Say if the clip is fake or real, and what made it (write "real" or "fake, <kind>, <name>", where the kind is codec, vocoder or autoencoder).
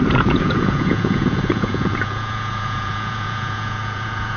fake, vocoder, Vocos